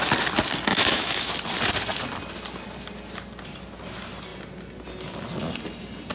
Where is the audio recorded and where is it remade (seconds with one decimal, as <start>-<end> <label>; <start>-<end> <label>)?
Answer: 0.0-0.7 recorded; 0.7-1.3 remade; 1.3-6.1 recorded